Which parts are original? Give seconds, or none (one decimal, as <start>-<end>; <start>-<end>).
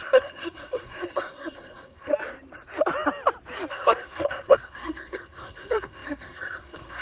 2.1-3.7